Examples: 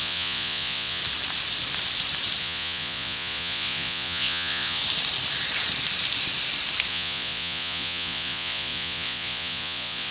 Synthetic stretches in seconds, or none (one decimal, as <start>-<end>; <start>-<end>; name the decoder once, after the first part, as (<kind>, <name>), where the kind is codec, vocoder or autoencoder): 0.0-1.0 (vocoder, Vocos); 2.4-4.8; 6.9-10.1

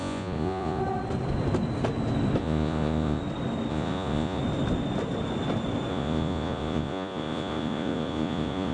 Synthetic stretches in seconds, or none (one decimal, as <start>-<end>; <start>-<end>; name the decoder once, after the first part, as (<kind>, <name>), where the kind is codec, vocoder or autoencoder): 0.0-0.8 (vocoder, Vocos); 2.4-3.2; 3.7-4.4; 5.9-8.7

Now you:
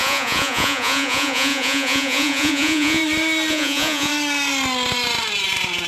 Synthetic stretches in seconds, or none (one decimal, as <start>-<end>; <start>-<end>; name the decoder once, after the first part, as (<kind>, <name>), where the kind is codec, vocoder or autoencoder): 0.0-3.0 (vocoder, Vocos); 3.5-4.1

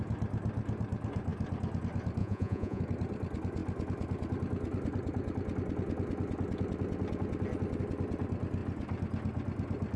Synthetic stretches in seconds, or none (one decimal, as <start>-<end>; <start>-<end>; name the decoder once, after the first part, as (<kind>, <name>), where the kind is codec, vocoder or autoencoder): 2.2-2.8 (vocoder, Vocos)

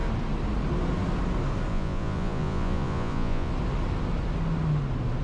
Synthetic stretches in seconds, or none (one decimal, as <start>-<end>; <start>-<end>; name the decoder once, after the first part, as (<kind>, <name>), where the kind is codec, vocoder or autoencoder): 1.7-3.5 (vocoder, Vocos)